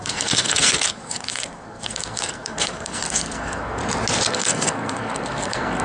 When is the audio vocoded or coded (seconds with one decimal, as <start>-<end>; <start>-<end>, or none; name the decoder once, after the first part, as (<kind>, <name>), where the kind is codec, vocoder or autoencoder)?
0.0-3.8 (codec, SNAC); 4.3-5.8